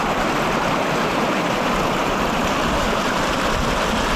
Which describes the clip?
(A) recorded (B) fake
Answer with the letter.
A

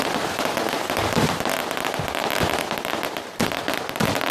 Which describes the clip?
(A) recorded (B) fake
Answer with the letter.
B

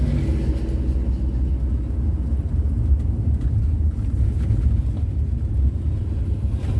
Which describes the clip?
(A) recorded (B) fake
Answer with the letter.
A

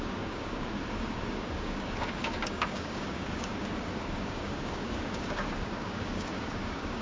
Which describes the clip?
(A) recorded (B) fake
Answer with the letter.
B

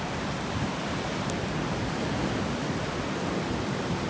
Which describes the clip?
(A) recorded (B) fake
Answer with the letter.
A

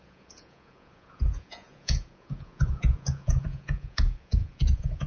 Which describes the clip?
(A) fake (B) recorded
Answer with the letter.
A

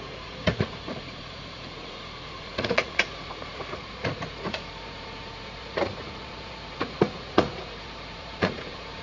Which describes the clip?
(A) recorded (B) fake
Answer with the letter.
B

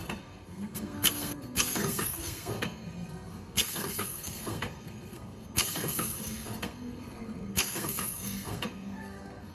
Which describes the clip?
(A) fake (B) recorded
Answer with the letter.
A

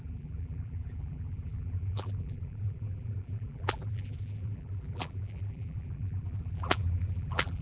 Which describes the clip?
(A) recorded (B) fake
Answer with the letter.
B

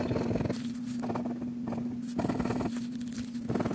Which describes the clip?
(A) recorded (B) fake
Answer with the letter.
A